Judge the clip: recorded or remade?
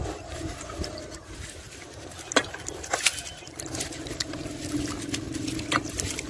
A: remade